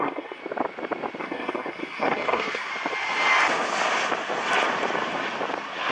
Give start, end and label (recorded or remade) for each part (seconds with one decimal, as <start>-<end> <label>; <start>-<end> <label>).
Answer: 0.0-0.4 remade; 0.4-1.2 recorded; 1.2-2.7 remade; 2.7-5.9 recorded